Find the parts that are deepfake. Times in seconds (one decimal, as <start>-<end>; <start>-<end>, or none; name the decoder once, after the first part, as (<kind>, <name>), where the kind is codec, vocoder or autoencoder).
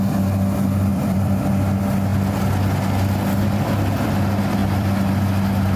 0.9-1.4 (vocoder, BigVGAN v2); 4.6-5.8